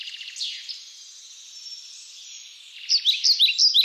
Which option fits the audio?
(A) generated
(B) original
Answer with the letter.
B